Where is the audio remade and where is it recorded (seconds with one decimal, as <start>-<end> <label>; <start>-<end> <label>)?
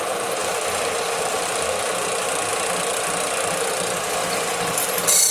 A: 0.0-0.4 recorded; 0.4-1.9 remade; 1.9-5.3 recorded